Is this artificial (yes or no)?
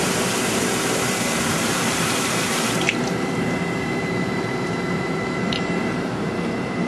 yes